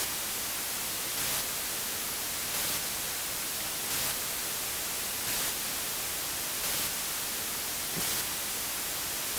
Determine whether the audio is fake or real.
real